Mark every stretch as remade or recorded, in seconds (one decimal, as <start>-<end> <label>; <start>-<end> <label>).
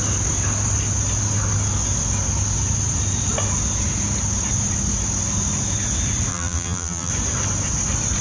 0.0-6.3 recorded; 6.3-7.1 remade; 7.1-8.2 recorded